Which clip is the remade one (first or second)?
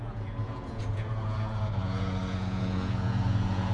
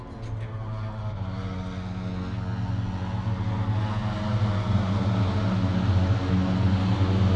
first